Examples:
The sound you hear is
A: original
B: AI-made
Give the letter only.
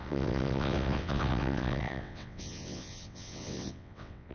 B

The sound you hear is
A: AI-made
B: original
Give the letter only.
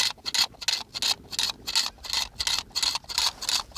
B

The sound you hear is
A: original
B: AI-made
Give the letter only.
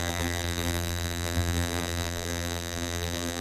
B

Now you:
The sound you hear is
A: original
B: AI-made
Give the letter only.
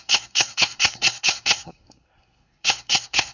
B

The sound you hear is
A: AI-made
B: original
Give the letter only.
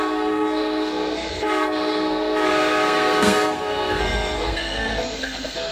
A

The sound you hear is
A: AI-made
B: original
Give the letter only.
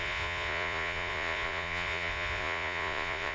A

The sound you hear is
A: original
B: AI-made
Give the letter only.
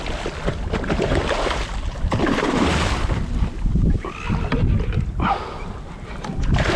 A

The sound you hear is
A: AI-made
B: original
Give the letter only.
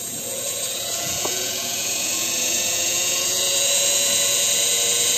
A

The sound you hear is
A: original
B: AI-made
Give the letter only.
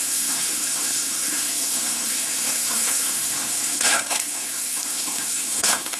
B